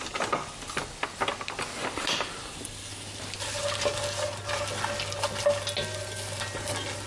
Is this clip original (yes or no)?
yes